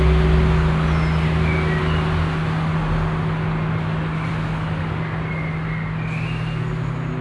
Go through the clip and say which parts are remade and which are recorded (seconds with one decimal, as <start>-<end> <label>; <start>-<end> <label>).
0.0-7.2 recorded